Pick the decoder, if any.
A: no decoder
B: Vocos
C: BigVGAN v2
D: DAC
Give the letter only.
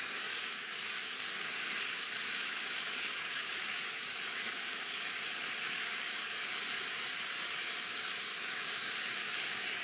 D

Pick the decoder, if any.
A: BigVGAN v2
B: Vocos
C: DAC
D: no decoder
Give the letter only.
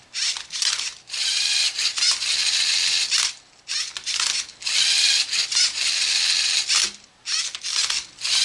D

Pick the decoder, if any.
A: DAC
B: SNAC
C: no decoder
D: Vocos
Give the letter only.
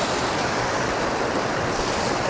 C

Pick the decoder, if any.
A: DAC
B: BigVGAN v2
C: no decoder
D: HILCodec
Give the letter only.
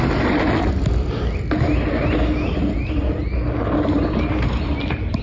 C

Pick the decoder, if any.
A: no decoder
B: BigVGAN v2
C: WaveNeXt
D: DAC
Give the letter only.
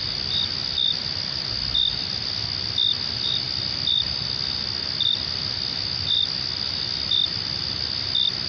A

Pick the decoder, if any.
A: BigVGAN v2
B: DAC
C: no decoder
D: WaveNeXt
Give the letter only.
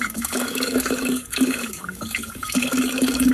B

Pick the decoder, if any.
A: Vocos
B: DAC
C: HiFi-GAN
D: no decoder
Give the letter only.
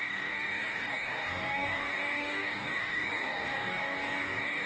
B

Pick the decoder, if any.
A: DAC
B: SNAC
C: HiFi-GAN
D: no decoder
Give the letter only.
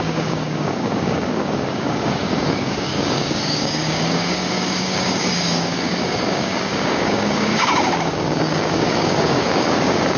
A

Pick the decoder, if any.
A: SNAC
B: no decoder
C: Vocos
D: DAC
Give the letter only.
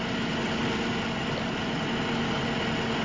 B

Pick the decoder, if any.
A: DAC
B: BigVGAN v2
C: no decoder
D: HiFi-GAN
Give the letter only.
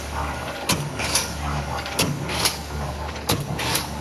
A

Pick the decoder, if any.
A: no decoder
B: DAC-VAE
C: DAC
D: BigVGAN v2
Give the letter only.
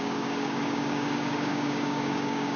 C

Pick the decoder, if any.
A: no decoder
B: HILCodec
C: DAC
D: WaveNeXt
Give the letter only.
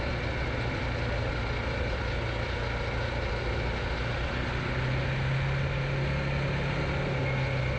A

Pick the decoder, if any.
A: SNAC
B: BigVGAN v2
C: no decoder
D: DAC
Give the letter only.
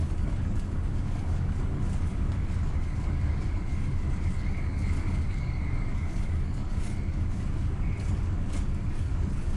D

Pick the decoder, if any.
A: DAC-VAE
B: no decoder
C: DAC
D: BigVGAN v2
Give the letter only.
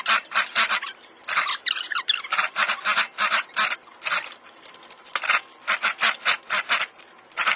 B